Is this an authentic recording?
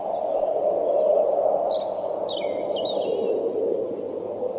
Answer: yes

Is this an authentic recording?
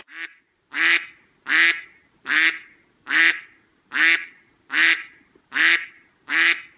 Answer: yes